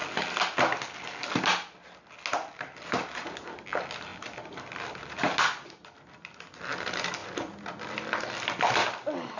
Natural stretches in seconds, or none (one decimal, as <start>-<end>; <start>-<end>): 0.0-9.4